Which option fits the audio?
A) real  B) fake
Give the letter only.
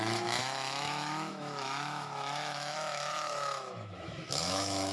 B